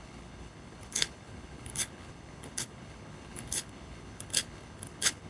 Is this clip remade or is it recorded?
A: remade